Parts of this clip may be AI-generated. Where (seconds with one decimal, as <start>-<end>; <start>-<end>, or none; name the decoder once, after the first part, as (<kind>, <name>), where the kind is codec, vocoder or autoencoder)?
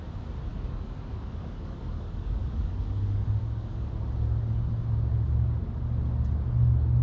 0.5-3.9 (codec, DAC)